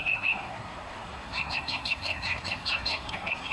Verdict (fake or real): fake